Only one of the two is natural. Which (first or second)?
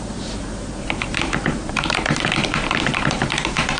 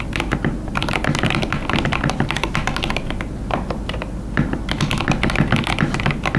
second